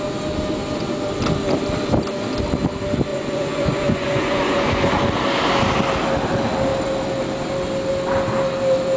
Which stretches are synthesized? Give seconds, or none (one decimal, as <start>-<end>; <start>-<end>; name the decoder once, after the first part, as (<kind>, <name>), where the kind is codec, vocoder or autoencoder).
3.1-4.9 (vocoder, Vocos)